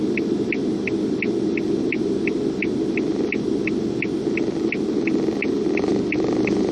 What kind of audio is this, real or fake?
real